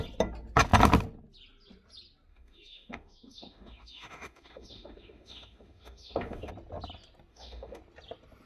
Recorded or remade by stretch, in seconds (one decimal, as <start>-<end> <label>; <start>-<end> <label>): 0.0-2.3 recorded; 2.3-6.5 remade; 6.5-7.3 recorded; 7.3-7.8 remade; 7.8-8.5 recorded